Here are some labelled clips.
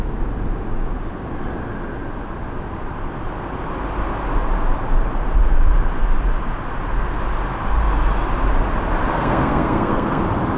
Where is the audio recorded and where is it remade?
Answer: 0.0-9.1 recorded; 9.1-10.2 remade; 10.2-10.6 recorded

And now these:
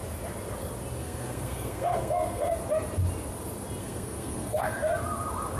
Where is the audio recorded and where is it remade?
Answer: 0.0-1.0 recorded; 1.0-2.6 remade; 2.6-3.8 recorded; 3.8-4.9 remade; 4.9-5.6 recorded

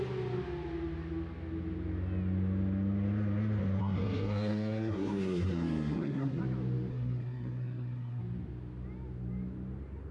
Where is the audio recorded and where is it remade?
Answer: 0.0-3.8 recorded; 3.8-6.4 remade; 6.4-6.9 recorded; 6.9-8.2 remade; 8.2-10.1 recorded

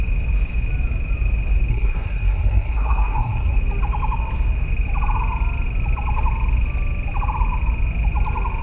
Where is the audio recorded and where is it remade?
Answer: 0.0-1.7 recorded; 1.7-3.6 remade; 3.6-8.6 recorded

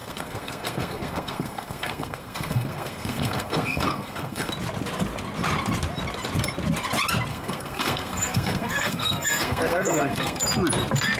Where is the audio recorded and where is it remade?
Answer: 0.0-4.5 remade; 4.5-7.3 recorded; 7.3-10.4 remade; 10.4-11.2 recorded

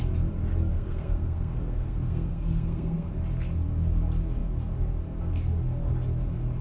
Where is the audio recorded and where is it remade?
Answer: 0.0-0.7 recorded; 0.7-3.1 remade; 3.1-6.6 recorded

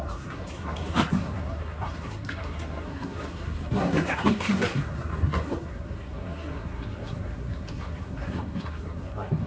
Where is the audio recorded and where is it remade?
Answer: 0.0-9.5 remade

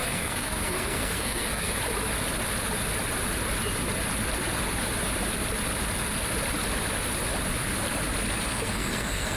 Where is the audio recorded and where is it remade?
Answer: 0.0-1.8 remade; 1.8-8.5 recorded; 8.5-9.4 remade